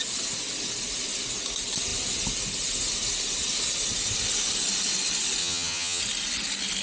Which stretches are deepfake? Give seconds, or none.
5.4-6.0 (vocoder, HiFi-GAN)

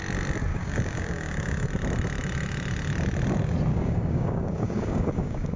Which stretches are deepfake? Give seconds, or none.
0.5-1.7 (codec, DAC); 3.7-5.6

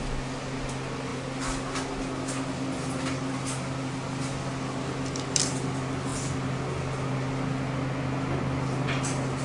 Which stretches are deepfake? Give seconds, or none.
none

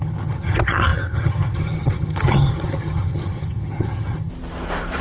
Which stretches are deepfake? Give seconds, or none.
0.0-4.3 (vocoder, HiFi-GAN)

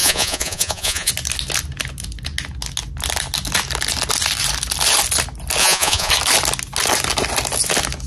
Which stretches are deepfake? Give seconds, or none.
0.0-1.1 (vocoder, Vocos); 5.6-6.1

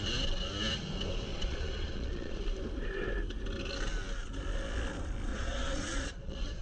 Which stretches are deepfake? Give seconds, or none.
1.3-2.4 (vocoder, Vocos); 5.3-6.6